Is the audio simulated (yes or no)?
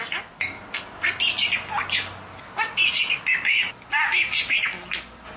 no